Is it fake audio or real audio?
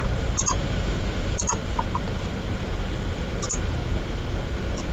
real